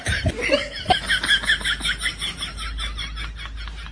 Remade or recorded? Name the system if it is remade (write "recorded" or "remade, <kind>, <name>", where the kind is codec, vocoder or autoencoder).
recorded